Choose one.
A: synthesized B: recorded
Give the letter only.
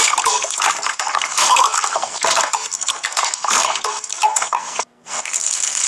A